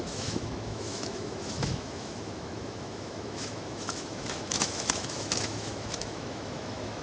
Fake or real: fake